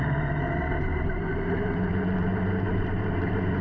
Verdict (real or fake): fake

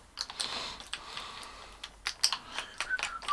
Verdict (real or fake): real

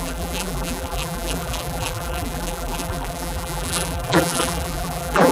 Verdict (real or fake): fake